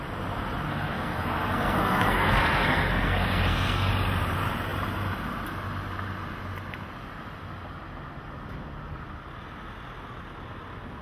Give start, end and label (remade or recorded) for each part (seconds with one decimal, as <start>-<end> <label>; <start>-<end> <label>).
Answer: 0.0-0.7 recorded; 0.7-3.9 remade; 3.9-11.0 recorded